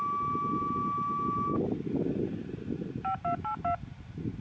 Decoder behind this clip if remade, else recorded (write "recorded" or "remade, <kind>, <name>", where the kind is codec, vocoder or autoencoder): recorded